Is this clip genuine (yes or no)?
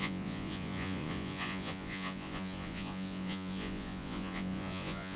no